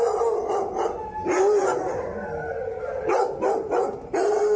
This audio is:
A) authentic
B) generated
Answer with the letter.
A